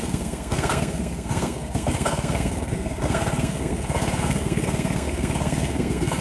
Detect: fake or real fake